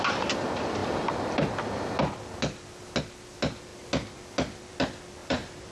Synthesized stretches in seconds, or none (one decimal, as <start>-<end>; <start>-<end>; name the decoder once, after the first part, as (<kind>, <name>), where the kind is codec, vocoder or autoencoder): 5.2-5.7 (vocoder, BigVGAN v2)